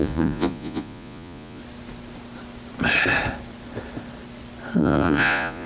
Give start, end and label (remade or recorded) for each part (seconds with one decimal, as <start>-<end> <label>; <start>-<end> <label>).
0.0-1.6 remade; 1.6-4.8 recorded; 4.8-5.7 remade